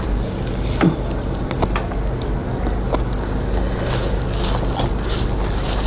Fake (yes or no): no